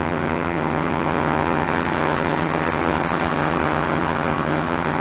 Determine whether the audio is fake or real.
fake